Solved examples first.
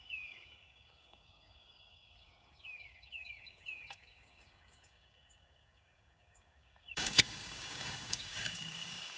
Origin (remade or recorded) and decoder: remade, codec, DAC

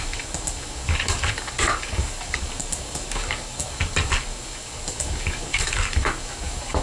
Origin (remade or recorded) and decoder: remade, codec, DAC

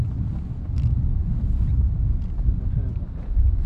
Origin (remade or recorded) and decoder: recorded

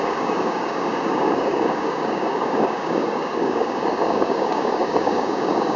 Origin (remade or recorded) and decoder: remade, codec, DAC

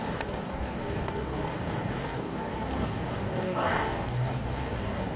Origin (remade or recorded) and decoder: remade, codec, DAC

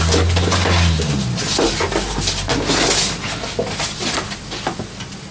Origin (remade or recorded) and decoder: recorded